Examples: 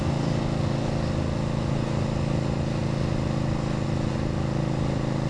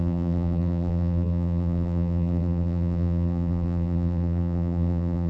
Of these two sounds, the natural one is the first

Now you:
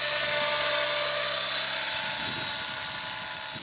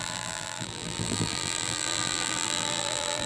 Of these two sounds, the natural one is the first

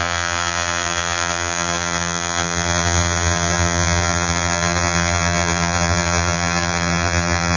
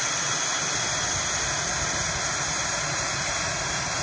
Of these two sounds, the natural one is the second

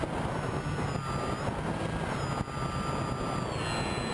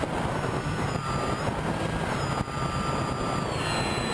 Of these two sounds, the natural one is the first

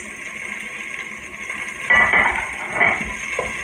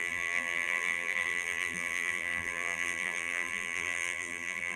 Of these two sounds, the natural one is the first